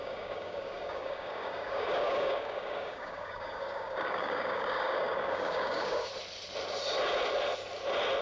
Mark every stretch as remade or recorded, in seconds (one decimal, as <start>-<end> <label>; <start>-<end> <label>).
0.0-6.1 remade; 6.1-8.2 recorded